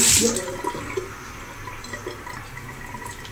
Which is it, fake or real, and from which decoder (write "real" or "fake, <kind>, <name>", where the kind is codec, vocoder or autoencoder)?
real